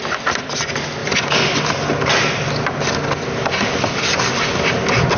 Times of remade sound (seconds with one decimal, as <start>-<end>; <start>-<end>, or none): none